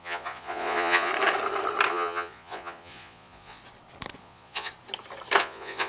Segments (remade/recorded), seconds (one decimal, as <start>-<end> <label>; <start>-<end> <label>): 0.0-1.1 remade; 1.1-1.9 recorded; 1.9-3.6 remade; 3.6-4.2 recorded; 4.2-4.7 remade; 4.7-5.4 recorded; 5.4-5.9 remade